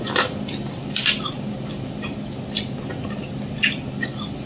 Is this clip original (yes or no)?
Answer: yes